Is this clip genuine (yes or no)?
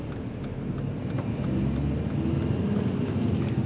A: yes